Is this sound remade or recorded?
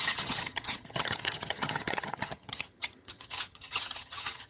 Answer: remade